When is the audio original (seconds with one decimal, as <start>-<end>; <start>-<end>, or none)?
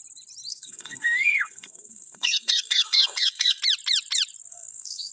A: 0.0-0.5; 3.6-4.5